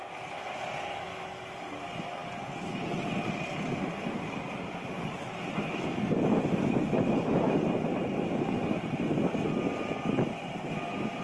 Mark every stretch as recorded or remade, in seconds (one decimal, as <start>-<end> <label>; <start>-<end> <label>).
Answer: 0.0-11.2 recorded